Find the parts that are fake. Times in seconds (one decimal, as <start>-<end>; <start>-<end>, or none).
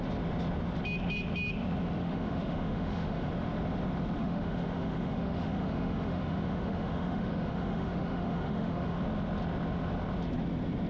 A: 2.0-3.3; 4.2-9.0